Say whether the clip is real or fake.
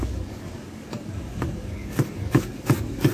fake